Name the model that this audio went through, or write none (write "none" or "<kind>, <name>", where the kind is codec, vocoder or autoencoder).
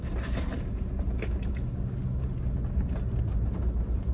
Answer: none